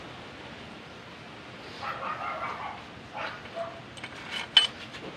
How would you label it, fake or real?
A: real